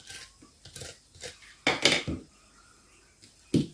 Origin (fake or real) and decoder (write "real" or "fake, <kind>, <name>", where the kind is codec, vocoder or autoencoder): real